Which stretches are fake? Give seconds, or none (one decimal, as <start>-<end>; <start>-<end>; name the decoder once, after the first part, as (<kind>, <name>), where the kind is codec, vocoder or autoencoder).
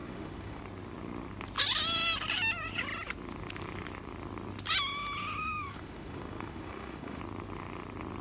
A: 0.0-0.6 (autoencoder, DAC-VAE); 5.4-7.2